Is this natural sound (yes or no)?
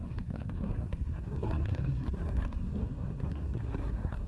no